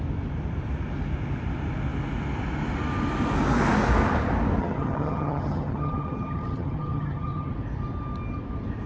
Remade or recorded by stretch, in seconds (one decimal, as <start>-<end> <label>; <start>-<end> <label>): 0.0-4.6 recorded; 4.6-7.5 remade; 7.5-8.9 recorded